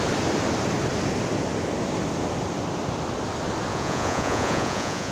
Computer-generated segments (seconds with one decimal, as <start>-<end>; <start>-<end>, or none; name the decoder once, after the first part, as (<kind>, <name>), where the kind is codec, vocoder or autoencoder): 3.7-5.1 (vocoder, Vocos)